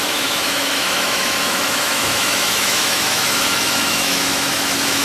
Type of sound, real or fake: fake